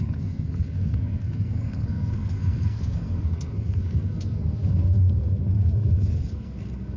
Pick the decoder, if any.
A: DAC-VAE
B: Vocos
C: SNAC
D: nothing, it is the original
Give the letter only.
C